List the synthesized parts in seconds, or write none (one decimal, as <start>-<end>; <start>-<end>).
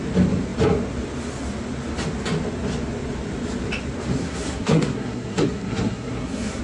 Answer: 4.2-6.6